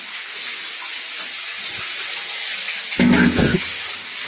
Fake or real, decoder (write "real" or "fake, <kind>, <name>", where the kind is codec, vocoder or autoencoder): real